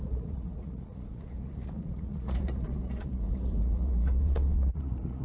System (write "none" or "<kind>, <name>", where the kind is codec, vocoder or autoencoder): vocoder, Vocos